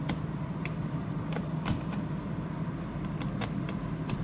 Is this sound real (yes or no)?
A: no